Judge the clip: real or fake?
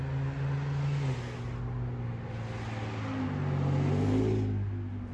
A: real